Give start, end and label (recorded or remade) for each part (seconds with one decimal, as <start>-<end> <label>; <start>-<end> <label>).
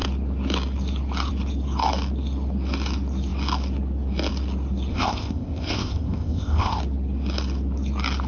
0.0-4.9 recorded; 4.9-6.8 remade; 6.8-8.3 recorded